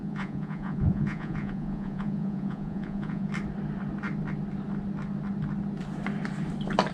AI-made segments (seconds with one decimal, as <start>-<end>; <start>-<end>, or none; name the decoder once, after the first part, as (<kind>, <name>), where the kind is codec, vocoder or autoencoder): 0.0-3.3 (vocoder, Vocos)